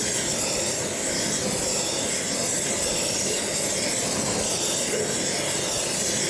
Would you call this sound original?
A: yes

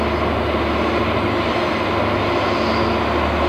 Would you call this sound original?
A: yes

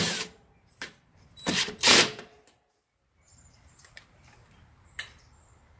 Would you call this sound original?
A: no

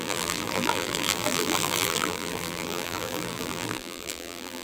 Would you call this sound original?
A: no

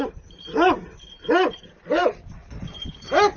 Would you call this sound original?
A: yes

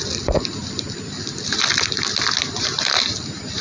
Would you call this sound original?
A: no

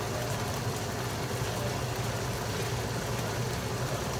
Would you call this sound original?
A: yes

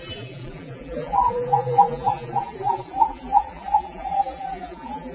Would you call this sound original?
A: no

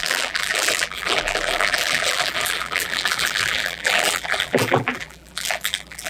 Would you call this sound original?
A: no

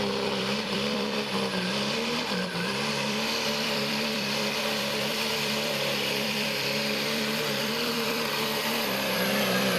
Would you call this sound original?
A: no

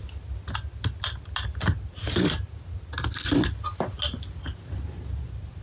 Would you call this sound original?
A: yes